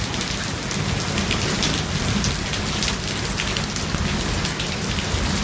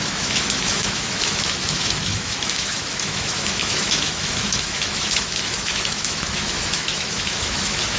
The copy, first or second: second